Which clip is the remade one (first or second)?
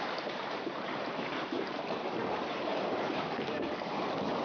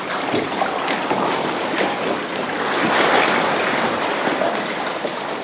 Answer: first